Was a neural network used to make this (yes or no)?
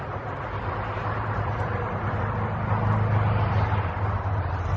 no